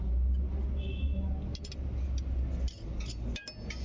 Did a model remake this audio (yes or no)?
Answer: no